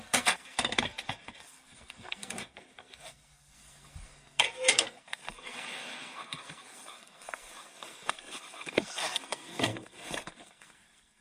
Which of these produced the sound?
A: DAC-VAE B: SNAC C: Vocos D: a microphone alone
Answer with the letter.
B